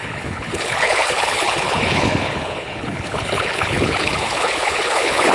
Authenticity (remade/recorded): remade